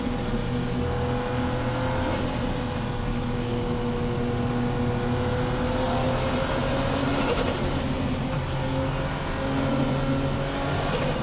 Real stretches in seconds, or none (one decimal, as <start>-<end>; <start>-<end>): 0.0-3.1; 4.2-11.2